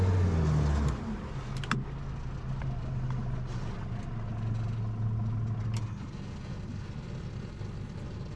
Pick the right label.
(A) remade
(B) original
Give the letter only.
B